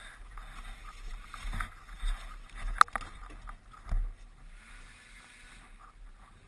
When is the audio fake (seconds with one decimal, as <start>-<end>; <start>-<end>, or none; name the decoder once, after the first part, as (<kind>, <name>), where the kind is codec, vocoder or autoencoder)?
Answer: none